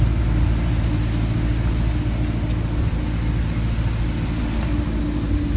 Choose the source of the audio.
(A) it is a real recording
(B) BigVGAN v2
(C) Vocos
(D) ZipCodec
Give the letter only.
A